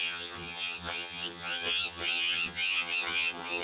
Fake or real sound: fake